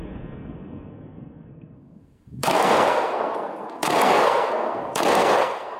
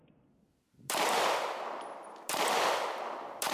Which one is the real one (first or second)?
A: second